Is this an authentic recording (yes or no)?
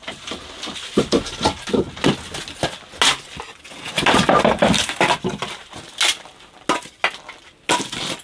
yes